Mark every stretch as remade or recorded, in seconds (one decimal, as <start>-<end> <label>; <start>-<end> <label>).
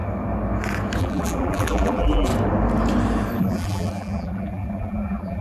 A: 0.0-1.0 recorded; 1.0-2.3 remade; 2.3-3.4 recorded; 3.4-5.4 remade